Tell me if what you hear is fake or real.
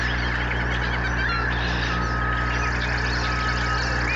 real